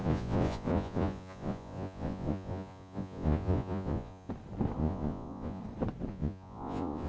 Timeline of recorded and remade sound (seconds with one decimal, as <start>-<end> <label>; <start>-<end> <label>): 0.0-4.3 remade; 4.3-4.8 recorded; 4.8-5.6 remade; 5.6-6.1 recorded; 6.1-7.1 remade